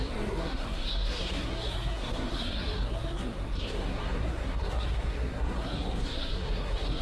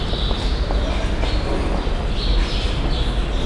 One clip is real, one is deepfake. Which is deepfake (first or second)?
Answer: first